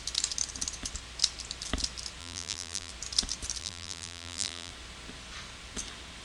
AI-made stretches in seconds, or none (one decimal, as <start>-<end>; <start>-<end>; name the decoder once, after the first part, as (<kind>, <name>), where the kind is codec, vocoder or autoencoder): 2.2-2.9 (vocoder, BigVGAN v2); 3.6-4.7